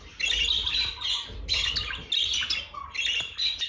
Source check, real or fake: real